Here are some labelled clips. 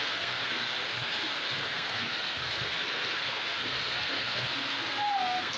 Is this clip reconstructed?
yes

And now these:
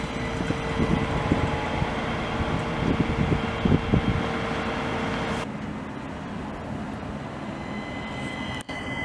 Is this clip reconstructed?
no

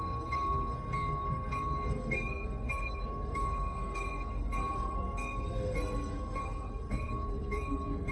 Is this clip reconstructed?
yes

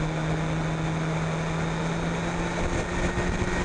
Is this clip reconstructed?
no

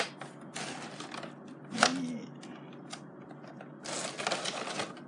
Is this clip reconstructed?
no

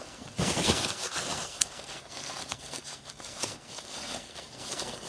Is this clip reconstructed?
yes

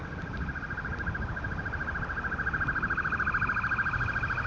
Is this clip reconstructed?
no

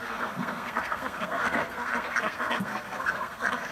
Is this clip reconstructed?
yes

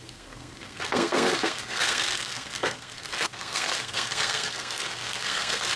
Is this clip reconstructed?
yes